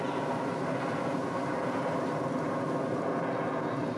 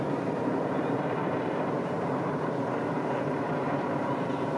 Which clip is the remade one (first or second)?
second